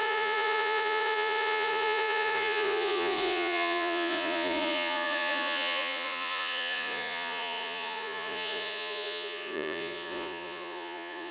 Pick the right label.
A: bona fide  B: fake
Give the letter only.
B